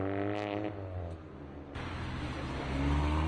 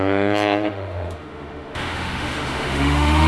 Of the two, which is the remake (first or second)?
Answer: second